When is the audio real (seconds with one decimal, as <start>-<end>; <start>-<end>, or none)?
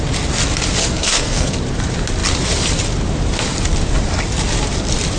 0.0-0.8; 1.5-5.2